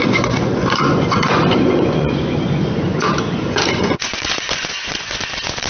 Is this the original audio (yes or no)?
no